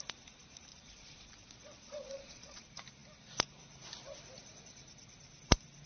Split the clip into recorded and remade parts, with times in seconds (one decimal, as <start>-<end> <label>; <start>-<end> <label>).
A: 0.0-0.7 recorded; 0.7-2.6 remade; 2.6-5.9 recorded